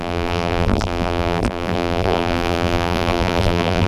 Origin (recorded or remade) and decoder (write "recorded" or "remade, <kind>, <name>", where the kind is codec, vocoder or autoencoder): remade, vocoder, BigVGAN v2